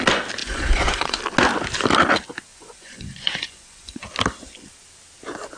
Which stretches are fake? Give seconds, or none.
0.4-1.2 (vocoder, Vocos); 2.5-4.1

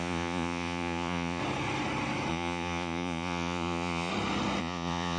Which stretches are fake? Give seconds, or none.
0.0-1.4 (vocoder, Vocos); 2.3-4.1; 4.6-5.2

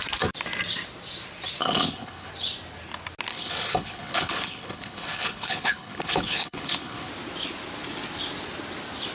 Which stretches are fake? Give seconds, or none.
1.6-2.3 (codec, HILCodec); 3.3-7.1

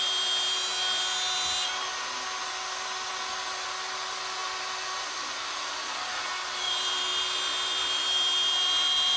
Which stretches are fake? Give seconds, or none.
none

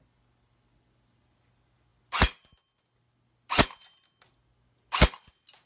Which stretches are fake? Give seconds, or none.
none